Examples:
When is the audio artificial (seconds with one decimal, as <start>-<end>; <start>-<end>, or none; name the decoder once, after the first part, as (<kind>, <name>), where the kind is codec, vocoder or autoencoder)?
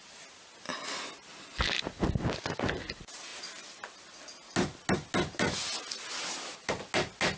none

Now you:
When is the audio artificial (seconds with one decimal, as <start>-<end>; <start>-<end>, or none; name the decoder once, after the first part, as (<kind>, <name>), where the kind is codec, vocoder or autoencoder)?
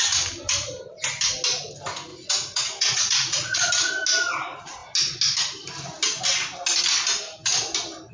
2.1-3.7 (vocoder, Vocos)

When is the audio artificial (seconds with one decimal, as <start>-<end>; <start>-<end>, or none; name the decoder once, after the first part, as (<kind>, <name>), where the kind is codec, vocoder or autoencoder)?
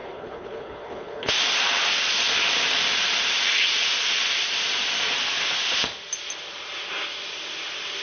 0.0-1.3 (codec, HILCodec)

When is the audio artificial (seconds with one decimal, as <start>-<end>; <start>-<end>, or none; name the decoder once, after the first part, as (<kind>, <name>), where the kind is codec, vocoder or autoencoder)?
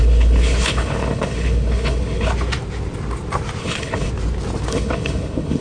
0.0-2.3 (codec, HILCodec); 3.6-4.1; 4.7-5.6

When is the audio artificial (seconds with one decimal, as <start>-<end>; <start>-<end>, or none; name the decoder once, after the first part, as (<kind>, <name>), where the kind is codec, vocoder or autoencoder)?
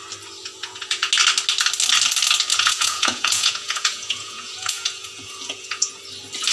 0.4-1.1 (vocoder, Vocos); 2.5-6.0